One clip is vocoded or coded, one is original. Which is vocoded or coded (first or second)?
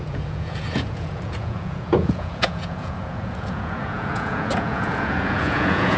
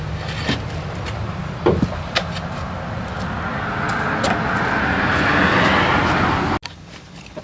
first